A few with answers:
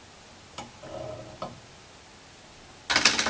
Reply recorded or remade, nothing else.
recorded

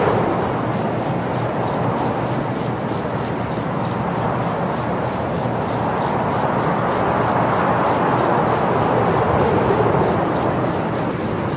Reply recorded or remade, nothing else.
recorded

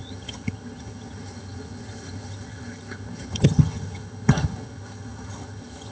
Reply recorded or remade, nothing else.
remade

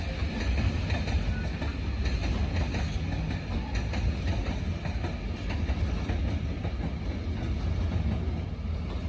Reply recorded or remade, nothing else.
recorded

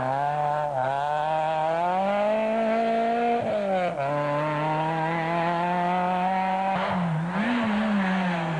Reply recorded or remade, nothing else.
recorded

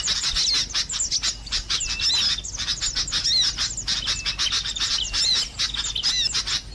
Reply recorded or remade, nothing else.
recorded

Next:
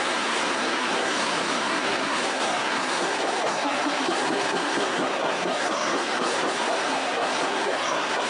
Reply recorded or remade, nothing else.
remade